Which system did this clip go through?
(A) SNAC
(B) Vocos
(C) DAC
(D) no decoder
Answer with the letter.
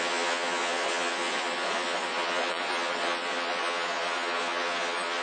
B